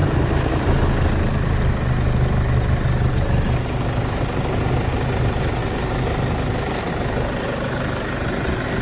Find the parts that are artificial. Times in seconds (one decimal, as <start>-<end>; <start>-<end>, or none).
none